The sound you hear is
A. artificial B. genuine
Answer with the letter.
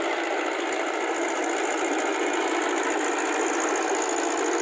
B